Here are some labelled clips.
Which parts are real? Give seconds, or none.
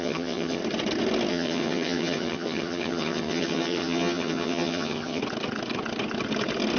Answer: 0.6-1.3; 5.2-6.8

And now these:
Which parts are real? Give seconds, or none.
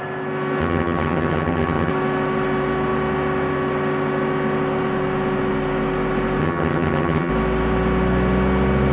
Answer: 0.0-0.6; 1.9-6.4; 7.3-8.9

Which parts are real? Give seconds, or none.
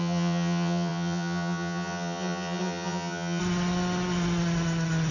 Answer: 3.4-5.1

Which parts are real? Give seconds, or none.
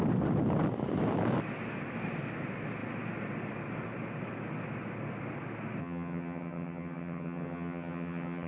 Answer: 0.0-5.8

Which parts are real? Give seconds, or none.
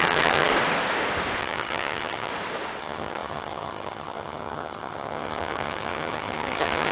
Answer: 0.5-1.4; 2.3-2.8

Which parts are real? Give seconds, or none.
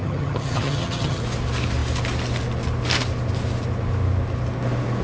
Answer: 1.2-5.0